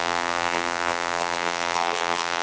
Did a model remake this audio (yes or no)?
yes